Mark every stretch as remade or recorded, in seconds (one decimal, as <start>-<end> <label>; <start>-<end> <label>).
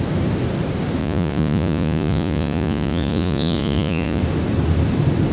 0.0-1.0 recorded; 1.0-4.2 remade; 4.2-5.3 recorded